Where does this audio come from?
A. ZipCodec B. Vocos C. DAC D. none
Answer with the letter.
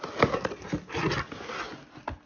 D